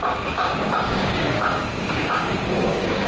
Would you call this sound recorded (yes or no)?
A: no